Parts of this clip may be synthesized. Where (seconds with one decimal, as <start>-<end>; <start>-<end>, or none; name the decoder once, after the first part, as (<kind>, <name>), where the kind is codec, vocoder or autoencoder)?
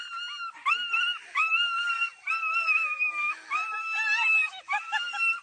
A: none